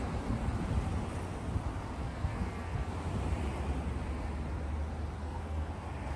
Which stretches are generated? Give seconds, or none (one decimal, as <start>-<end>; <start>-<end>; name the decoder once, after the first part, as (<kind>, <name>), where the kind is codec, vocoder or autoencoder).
2.0-2.9 (codec, SNAC); 5.2-5.7